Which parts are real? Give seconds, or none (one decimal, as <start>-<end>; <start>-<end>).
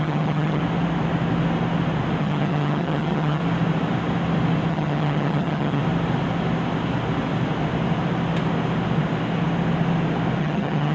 0.6-2.2; 3.4-4.7; 5.8-10.4